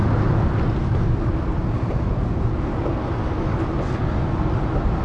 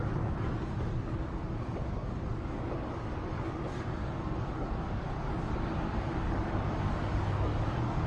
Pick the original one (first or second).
first